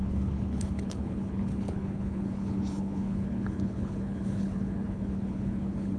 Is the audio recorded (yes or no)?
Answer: no